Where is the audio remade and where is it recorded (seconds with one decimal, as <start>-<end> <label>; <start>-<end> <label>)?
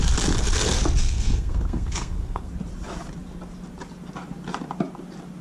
0.0-1.0 recorded; 1.0-2.5 remade; 2.5-5.4 recorded